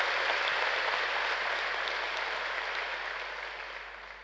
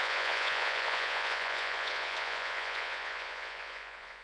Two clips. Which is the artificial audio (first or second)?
second